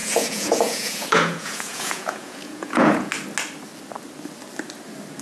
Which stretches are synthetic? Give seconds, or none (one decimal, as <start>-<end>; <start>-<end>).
0.0-3.1